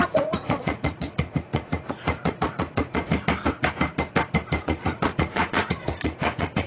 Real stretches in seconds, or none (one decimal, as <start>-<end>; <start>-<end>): 3.1-4.6